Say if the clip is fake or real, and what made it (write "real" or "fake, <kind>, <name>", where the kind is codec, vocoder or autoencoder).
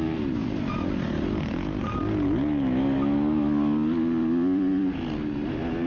real